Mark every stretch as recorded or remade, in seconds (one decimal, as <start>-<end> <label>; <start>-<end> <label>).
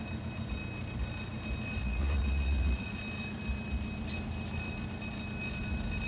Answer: 0.0-1.8 recorded; 1.8-3.0 remade; 3.0-6.1 recorded